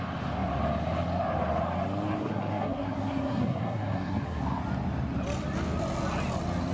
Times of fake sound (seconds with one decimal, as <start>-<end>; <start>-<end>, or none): 2.2-4.4